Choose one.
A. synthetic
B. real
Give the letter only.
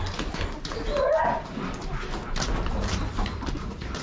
B